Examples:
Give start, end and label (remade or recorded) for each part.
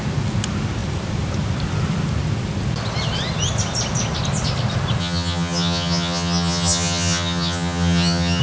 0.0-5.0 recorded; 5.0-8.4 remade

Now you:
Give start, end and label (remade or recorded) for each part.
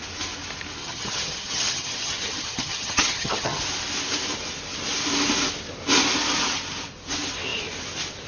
0.0-0.8 recorded; 0.8-3.6 remade; 3.6-8.3 recorded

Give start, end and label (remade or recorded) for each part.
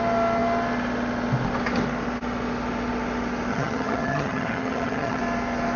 0.0-3.5 recorded; 3.5-5.2 remade; 5.2-5.8 recorded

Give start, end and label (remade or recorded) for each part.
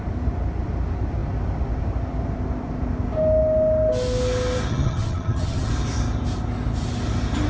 0.0-4.7 recorded; 4.7-5.7 remade; 5.7-7.5 recorded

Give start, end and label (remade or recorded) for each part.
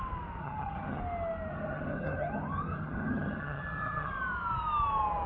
0.0-0.4 recorded; 0.4-1.0 remade; 1.0-1.5 recorded; 1.5-4.1 remade; 4.1-5.3 recorded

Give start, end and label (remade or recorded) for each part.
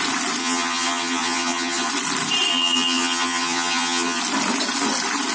0.0-0.4 recorded; 0.4-1.9 remade; 1.9-2.5 recorded; 2.5-4.2 remade; 4.2-5.3 recorded